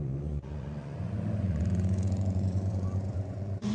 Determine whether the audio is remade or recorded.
remade